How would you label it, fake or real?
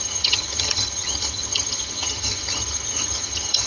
fake